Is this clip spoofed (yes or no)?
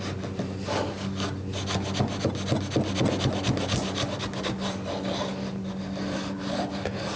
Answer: no